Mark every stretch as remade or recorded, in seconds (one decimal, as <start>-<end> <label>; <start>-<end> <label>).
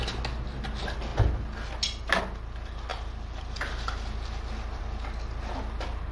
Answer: 0.0-6.1 recorded